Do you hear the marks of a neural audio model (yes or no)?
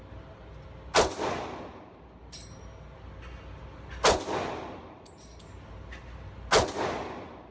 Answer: no